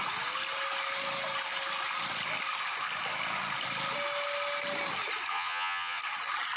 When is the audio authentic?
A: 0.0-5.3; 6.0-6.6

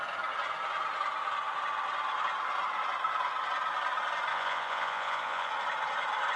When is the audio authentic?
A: 0.0-4.3; 5.5-6.4

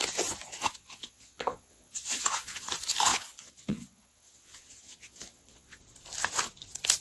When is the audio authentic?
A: 0.0-0.6; 2.7-3.1; 5.8-7.0

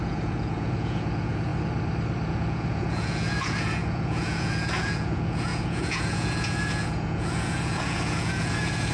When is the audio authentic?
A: 1.5-2.3